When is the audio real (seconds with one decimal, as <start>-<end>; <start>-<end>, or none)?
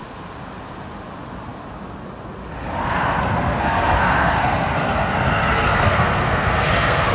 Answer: 0.0-2.8